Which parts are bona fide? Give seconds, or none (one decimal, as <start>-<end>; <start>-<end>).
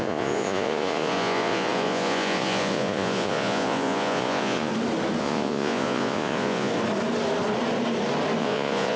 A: 4.7-5.2; 6.7-8.4